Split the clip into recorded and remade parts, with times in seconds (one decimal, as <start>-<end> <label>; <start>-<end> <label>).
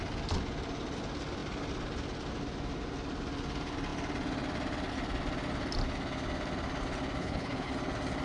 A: 0.0-7.2 recorded; 7.2-7.7 remade; 7.7-8.2 recorded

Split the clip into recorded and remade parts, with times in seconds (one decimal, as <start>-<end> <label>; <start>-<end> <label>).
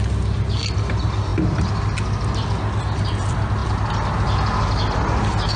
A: 0.0-5.6 recorded